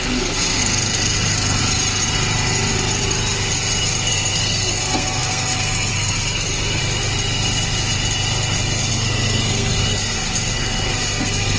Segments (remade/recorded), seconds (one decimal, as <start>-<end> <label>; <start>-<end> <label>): 0.0-1.6 remade; 1.6-4.1 recorded; 4.1-6.8 remade; 6.8-8.9 recorded; 8.9-11.6 remade